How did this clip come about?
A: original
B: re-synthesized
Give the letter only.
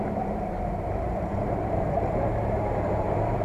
B